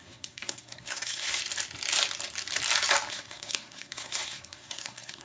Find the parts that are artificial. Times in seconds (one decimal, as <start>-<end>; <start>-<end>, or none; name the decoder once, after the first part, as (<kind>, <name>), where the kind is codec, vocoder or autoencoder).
0.0-1.4 (codec, SNAC); 3.1-5.2

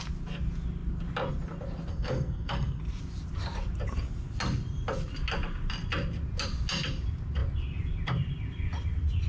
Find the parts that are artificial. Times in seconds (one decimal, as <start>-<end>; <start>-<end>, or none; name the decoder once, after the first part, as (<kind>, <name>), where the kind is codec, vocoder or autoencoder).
1.9-2.8 (codec, SNAC)

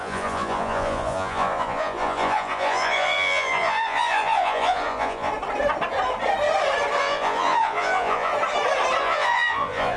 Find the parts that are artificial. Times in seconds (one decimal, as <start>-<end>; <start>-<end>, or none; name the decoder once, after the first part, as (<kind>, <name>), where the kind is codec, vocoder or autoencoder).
0.0-5.3 (vocoder, Vocos); 7.0-8.3; 9.0-10.0

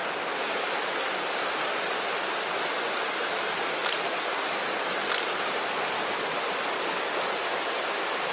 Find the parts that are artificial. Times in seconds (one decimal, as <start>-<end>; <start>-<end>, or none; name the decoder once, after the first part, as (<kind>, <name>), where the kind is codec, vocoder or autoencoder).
none

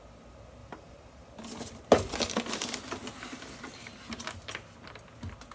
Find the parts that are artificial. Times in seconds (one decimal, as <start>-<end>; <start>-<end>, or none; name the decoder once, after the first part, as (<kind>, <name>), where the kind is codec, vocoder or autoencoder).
0.6-1.3 (vocoder, BigVGAN v2)

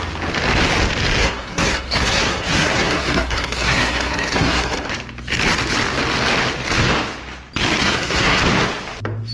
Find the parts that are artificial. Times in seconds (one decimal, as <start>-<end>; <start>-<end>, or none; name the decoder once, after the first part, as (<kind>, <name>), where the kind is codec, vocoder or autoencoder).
1.2-4.9 (codec, SNAC); 7.8-8.4